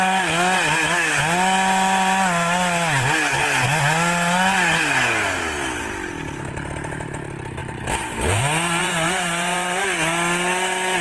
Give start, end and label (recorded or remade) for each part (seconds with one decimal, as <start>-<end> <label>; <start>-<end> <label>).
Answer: 0.0-7.6 recorded; 7.6-8.4 remade; 8.4-8.8 recorded; 8.8-9.8 remade; 9.8-11.0 recorded